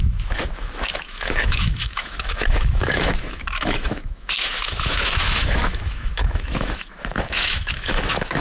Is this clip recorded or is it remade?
remade